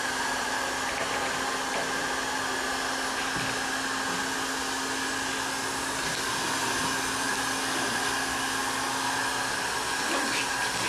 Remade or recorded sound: recorded